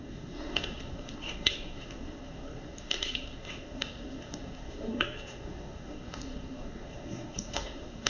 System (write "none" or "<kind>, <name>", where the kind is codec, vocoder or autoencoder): codec, SNAC